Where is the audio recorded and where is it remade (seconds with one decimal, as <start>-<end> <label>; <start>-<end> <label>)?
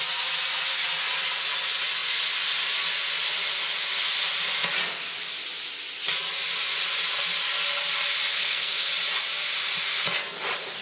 0.0-8.3 recorded; 8.3-8.9 remade; 8.9-10.8 recorded